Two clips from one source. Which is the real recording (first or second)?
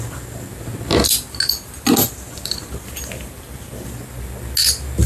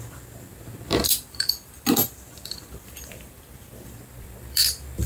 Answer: first